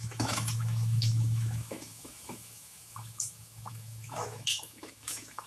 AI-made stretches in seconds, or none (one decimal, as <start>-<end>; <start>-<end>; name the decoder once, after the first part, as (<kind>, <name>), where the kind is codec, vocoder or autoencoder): 0.0-5.5 (autoencoder, DAC-VAE)